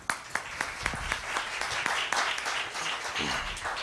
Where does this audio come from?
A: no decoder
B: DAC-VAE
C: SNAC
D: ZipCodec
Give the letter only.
A